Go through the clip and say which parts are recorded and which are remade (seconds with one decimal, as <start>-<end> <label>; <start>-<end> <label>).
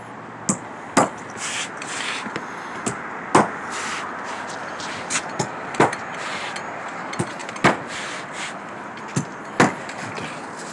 0.0-10.7 recorded